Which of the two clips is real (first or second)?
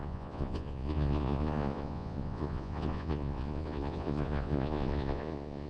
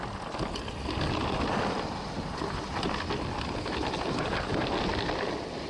second